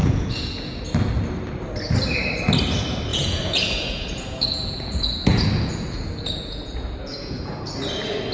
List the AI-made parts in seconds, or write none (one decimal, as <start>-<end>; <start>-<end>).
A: 0.0-0.8; 3.1-7.7